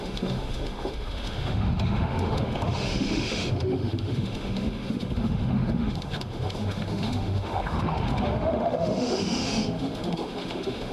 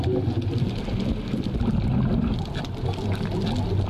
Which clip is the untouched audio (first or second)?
second